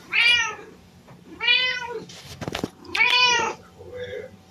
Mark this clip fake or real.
fake